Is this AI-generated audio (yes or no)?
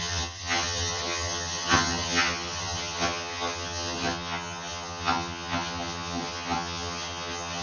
yes